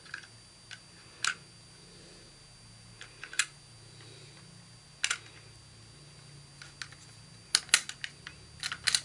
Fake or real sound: real